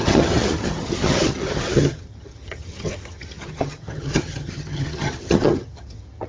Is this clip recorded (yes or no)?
no